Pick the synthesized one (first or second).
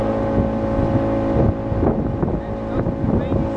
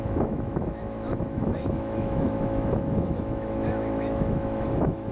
second